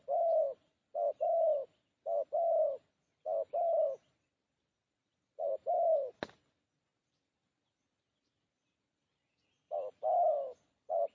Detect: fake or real real